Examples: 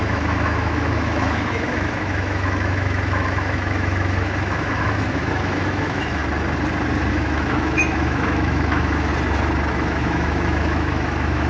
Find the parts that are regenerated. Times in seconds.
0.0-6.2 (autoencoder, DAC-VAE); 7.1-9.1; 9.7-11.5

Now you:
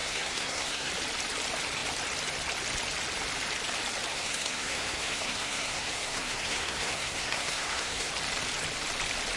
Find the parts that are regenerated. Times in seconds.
0.0-0.9 (codec, SNAC); 4.1-8.1

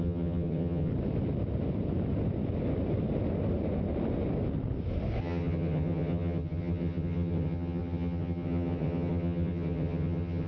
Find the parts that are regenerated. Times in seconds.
0.0-0.9 (vocoder, HiFi-GAN); 5.2-10.5

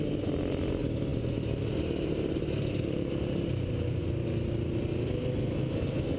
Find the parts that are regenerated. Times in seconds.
none

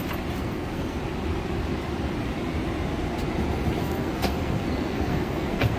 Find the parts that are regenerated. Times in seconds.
0.4-1.0 (codec, SNAC); 3.8-5.8

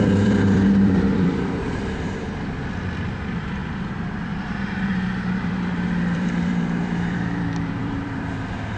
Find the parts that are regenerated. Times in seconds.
0.0-8.8 (vocoder, BigVGAN v2)

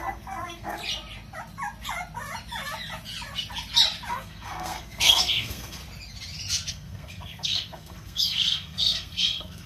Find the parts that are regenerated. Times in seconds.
0.0-0.8 (codec, SNAC); 4.1-5.8; 6.7-9.7